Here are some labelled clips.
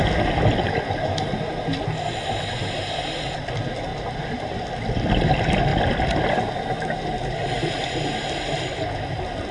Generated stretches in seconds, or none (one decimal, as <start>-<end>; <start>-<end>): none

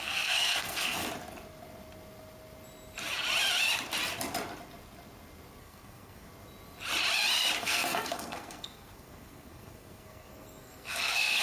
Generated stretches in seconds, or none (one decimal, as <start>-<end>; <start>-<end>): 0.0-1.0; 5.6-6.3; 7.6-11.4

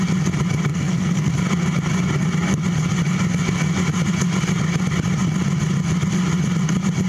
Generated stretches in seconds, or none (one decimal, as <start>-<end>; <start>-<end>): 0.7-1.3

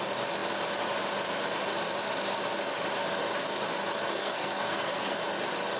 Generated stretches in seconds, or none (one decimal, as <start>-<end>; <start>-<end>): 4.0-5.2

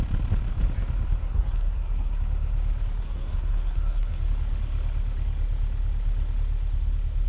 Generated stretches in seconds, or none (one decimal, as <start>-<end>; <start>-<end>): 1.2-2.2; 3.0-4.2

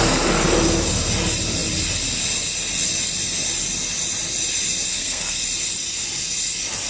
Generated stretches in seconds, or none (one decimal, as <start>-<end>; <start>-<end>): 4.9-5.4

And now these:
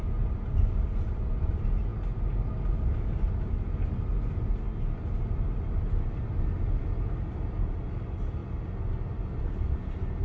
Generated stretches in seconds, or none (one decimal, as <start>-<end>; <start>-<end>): none